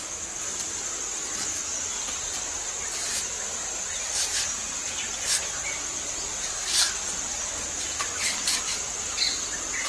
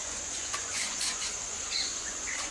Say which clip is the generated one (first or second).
second